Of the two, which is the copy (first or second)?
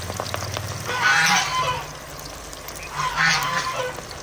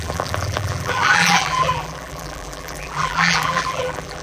second